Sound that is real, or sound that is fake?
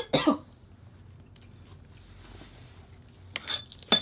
real